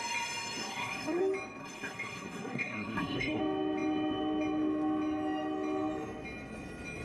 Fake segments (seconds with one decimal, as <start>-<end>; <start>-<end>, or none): 0.6-1.2; 1.6-3.4